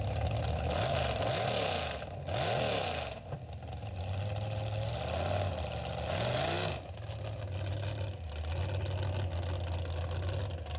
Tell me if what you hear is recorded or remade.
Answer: recorded